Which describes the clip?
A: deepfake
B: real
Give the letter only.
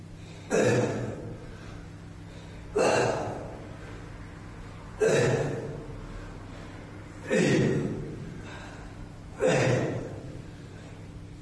B